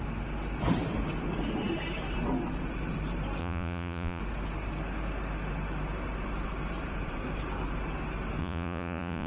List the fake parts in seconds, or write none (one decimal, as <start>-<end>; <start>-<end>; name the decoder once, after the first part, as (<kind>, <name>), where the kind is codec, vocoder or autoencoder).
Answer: 3.4-4.2 (vocoder, Vocos); 8.4-9.3